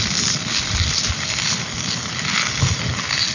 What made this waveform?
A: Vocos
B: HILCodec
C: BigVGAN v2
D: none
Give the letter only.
D